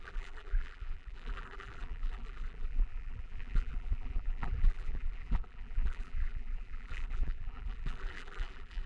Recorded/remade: remade